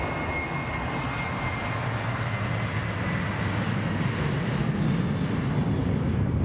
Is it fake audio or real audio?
real